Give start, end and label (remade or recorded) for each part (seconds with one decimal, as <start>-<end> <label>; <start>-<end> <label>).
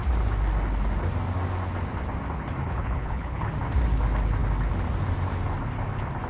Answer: 0.0-2.6 recorded; 2.6-3.5 remade; 3.5-6.3 recorded